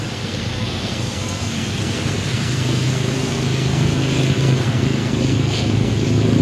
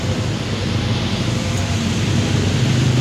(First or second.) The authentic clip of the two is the second